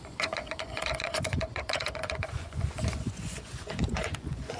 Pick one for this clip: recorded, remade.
remade